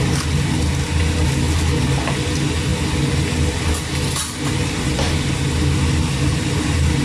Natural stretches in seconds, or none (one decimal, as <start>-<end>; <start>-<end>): 0.0-7.0